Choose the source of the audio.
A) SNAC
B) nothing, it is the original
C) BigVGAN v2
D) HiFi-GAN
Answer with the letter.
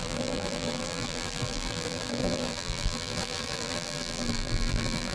C